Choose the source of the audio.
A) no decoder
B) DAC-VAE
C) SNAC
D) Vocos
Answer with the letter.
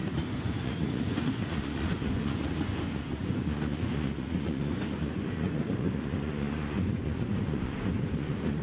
D